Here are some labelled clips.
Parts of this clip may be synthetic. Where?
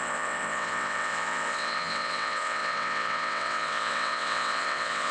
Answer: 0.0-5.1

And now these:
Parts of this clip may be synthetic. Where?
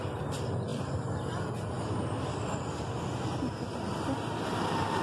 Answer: none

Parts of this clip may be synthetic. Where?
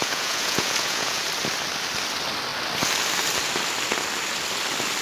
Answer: 0.0-1.2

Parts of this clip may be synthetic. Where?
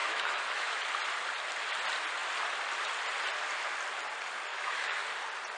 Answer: 0.0-0.8; 4.5-5.0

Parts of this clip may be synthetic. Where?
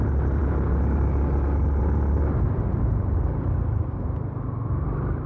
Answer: none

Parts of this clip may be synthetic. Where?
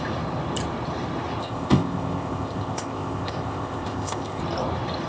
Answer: 1.4-4.4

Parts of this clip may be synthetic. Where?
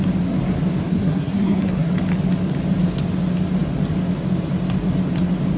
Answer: 0.9-1.9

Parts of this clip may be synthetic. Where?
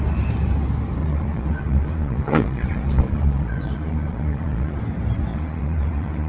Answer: 1.0-4.8; 5.3-6.3